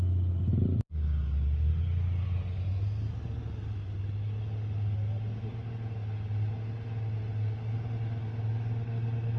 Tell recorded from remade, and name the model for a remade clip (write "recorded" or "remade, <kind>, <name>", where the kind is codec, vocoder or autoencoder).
recorded